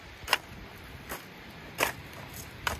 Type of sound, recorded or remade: recorded